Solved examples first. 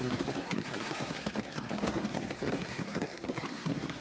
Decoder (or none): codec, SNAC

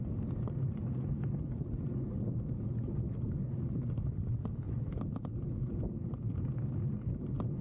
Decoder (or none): none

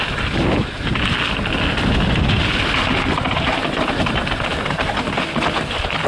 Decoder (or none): none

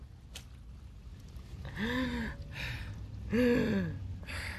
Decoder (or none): none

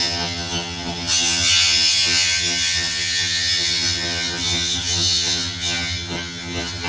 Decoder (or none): vocoder, HiFi-GAN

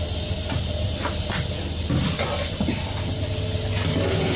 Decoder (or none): none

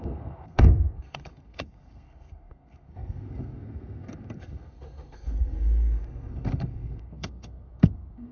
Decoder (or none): codec, SNAC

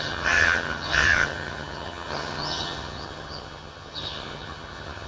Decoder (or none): vocoder, HiFi-GAN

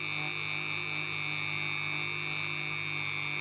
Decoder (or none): none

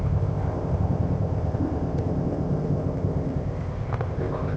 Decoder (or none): codec, ZipCodec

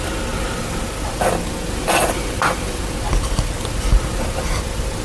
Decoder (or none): none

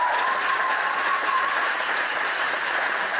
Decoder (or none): vocoder, Vocos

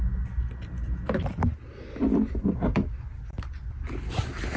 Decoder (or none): none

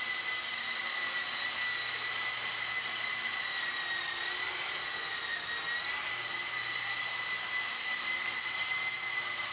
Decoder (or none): none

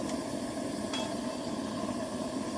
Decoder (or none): none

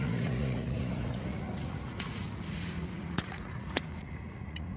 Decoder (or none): vocoder, Vocos